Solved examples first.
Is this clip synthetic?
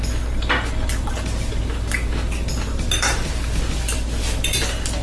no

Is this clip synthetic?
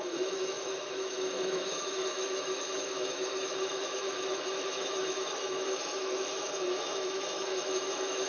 yes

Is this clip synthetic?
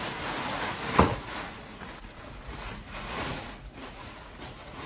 yes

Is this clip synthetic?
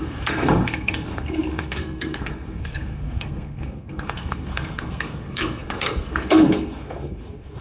yes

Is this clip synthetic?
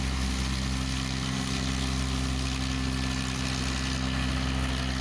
no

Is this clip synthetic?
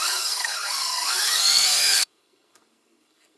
yes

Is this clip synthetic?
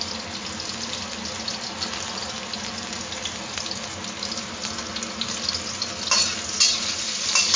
no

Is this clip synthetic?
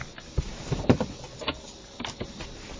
no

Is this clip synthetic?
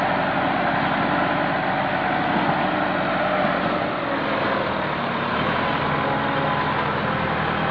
no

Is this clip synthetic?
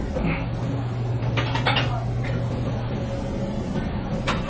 no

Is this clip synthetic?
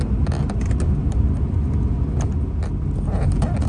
no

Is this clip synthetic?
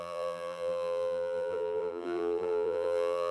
yes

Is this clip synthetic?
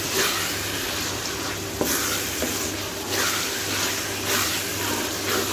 no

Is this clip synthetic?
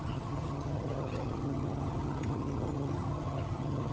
yes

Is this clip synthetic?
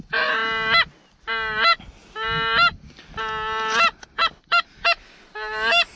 no